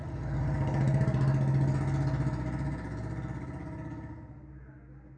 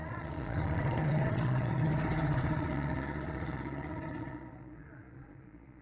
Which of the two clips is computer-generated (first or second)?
second